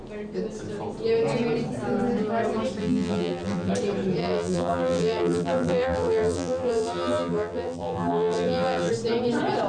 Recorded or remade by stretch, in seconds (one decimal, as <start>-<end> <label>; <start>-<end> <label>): 0.0-2.8 recorded; 2.8-3.7 remade; 3.7-4.2 recorded; 4.2-8.9 remade; 8.9-9.7 recorded